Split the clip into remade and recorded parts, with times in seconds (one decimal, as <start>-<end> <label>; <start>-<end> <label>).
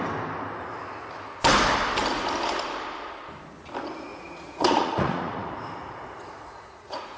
0.0-4.1 recorded; 4.1-5.5 remade; 5.5-6.2 recorded; 6.2-7.2 remade